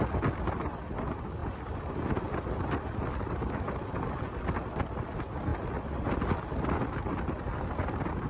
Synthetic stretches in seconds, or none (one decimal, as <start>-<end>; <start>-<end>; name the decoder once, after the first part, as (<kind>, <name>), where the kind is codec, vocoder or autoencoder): none